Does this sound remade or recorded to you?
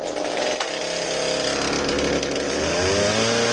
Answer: recorded